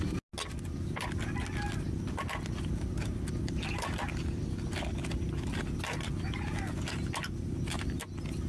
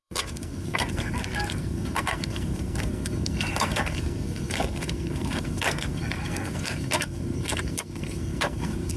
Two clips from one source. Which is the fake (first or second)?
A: second